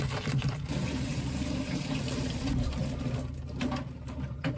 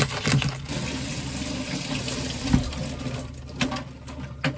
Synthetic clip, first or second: first